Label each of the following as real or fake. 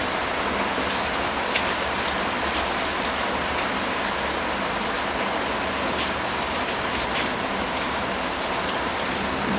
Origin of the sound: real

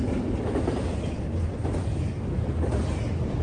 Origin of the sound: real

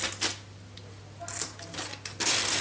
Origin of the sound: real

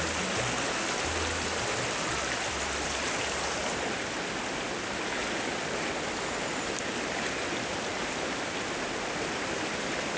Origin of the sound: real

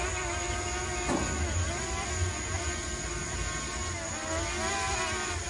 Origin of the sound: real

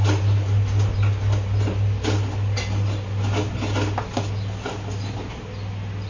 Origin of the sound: real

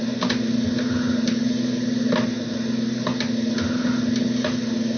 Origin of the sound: real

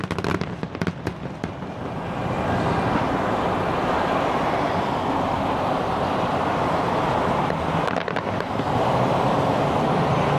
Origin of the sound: fake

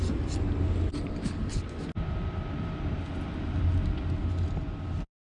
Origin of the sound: real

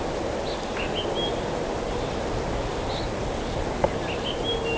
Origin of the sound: real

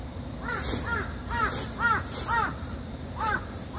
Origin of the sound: fake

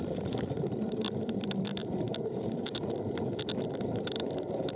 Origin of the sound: fake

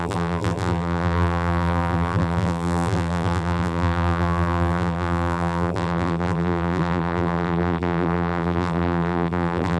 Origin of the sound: fake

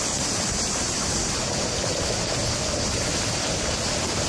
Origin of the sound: real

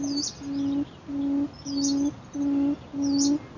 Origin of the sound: real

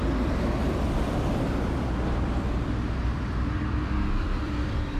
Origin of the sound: fake